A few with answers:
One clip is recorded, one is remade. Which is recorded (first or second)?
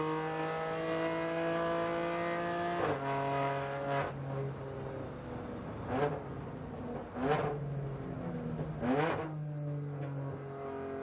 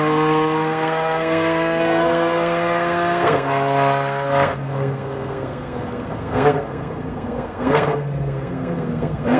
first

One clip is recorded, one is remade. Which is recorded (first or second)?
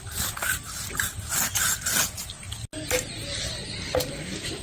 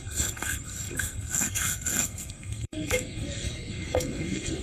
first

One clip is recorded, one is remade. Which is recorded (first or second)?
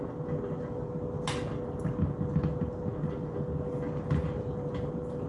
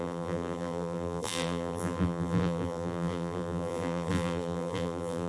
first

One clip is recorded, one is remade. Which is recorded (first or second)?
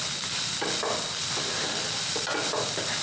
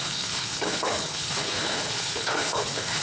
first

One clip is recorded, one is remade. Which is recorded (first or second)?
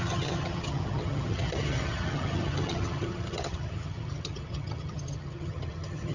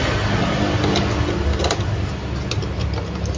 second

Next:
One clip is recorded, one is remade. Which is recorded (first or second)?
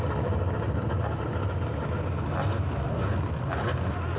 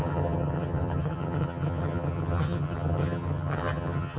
first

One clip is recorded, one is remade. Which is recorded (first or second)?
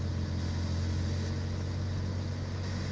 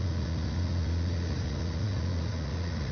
first